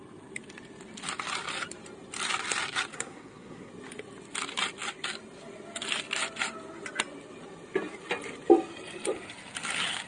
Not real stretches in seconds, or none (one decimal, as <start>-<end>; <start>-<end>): 2.9-3.7